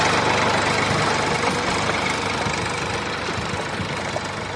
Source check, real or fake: real